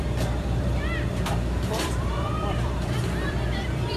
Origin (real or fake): fake